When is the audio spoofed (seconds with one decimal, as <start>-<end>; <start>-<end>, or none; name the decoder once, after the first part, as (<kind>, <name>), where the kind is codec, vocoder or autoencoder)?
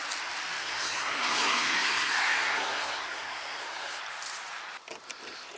0.6-4.0 (codec, SNAC)